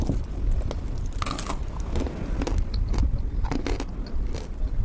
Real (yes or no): yes